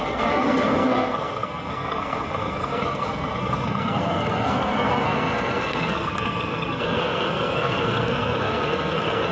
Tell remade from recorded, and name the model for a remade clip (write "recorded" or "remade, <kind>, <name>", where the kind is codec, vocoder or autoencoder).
remade, codec, SNAC